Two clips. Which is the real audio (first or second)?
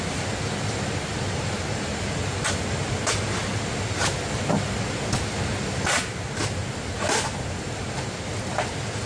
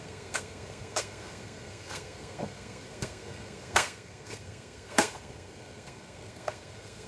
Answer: first